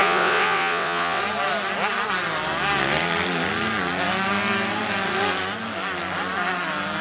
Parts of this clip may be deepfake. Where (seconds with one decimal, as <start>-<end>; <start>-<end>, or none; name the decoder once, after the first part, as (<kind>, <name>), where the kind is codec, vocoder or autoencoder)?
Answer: 0.0-1.2 (vocoder, WaveNeXt)